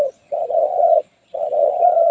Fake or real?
fake